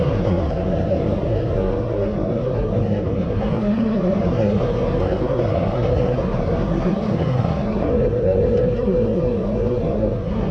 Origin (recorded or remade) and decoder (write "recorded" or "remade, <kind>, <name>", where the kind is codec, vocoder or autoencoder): remade, codec, SNAC